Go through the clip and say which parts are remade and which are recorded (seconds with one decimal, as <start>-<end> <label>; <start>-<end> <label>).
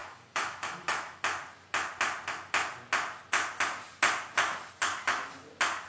0.0-1.2 remade; 1.2-5.9 recorded